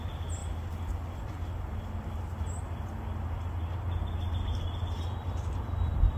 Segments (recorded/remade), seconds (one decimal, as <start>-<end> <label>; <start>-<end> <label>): 0.0-6.2 recorded